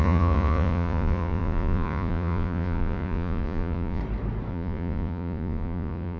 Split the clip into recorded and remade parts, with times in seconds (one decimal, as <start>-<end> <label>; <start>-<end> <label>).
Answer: 0.0-4.0 remade; 4.0-4.5 recorded; 4.5-6.2 remade